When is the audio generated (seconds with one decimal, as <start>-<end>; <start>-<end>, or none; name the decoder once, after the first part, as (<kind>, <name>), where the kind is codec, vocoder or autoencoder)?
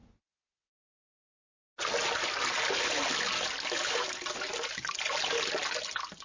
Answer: none